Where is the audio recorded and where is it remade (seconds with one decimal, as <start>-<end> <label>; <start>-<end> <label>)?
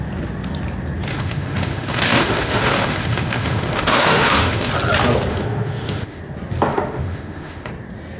0.0-1.1 recorded; 1.1-4.7 remade; 4.7-5.3 recorded; 5.3-6.2 remade; 6.2-6.7 recorded; 6.7-7.7 remade; 7.7-8.2 recorded